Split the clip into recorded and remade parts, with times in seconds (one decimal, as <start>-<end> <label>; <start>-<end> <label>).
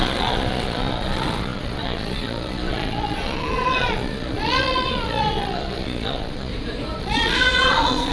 0.0-6.5 remade; 6.5-7.0 recorded; 7.0-8.1 remade